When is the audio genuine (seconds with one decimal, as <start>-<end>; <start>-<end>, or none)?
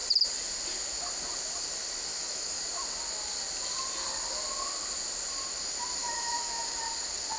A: 0.0-2.1; 2.6-6.0; 6.8-7.4